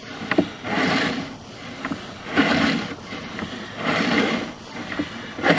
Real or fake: real